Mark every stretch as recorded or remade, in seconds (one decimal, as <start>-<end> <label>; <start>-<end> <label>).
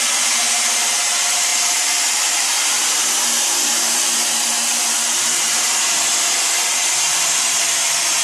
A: 0.0-1.5 recorded; 1.5-6.4 remade; 6.4-8.2 recorded